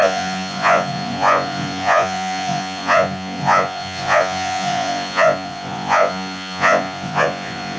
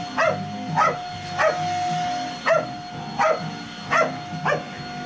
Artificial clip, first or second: first